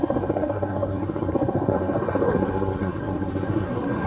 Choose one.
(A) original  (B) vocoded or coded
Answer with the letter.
B